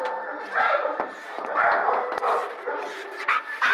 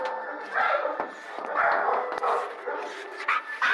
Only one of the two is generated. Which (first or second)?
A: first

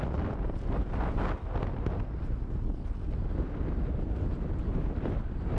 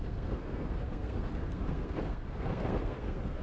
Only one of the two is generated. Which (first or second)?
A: second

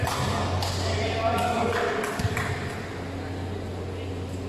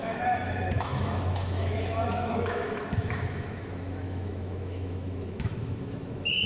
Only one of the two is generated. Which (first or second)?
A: second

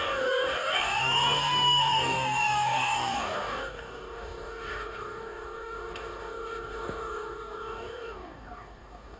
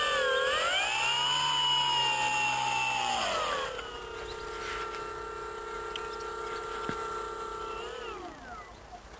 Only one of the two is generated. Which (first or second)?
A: first